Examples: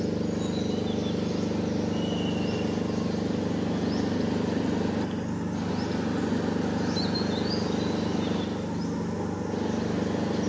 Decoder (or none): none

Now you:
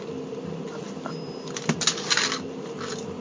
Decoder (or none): none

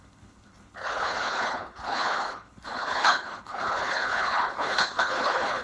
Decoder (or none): codec, HILCodec